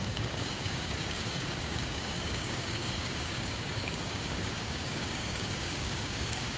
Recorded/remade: remade